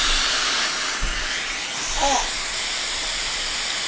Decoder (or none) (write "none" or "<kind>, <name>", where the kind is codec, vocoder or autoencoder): vocoder, BigVGAN v2